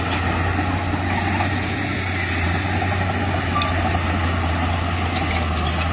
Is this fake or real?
real